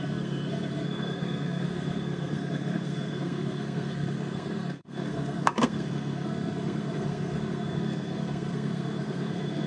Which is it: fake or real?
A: fake